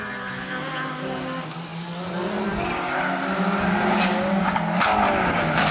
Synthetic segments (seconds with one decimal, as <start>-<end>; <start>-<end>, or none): none